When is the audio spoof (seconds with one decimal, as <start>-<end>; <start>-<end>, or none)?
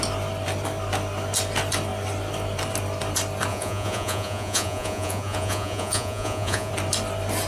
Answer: 3.5-6.7